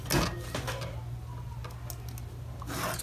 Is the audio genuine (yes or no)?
yes